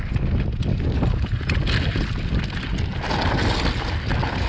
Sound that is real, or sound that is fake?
real